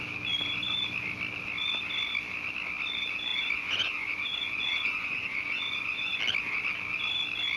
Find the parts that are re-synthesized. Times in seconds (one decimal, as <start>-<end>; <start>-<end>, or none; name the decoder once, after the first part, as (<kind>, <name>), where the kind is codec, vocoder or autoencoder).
3.3-6.2 (vocoder, Vocos)